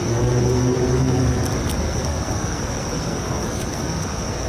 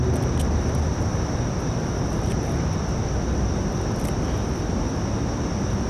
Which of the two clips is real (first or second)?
second